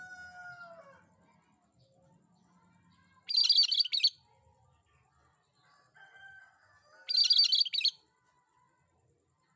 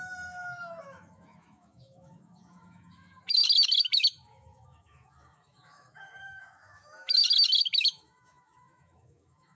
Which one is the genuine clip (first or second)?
first